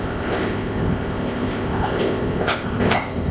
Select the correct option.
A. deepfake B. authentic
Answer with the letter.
A